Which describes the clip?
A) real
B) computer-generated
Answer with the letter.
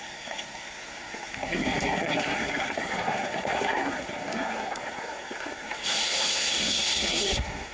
B